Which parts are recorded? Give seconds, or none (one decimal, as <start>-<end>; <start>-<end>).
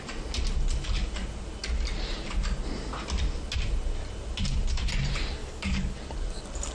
0.0-5.4; 6.0-6.7